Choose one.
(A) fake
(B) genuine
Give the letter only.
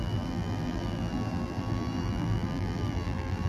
A